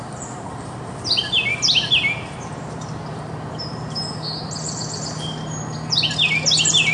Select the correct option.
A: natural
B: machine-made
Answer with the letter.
A